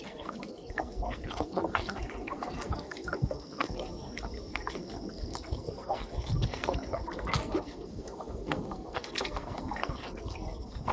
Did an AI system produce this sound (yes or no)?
yes